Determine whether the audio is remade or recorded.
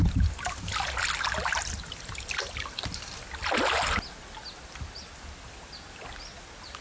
recorded